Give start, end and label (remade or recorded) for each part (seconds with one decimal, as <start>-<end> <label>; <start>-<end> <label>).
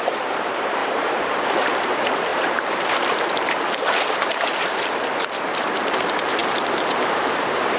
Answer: 0.0-7.8 remade